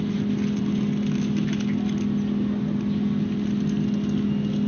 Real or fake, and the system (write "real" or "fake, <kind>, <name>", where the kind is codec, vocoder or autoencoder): real